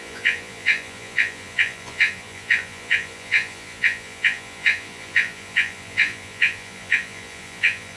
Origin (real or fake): fake